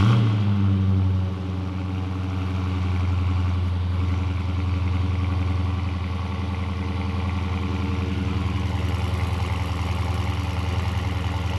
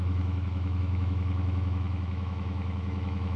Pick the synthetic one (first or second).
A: second